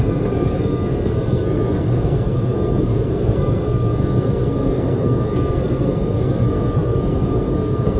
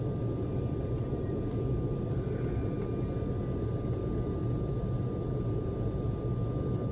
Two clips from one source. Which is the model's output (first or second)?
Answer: first